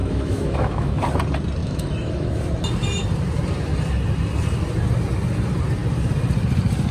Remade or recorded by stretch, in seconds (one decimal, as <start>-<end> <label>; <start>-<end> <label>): 0.0-1.0 remade; 1.0-1.6 recorded; 1.6-2.4 remade; 2.4-6.9 recorded